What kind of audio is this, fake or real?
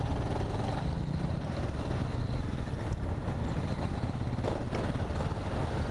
real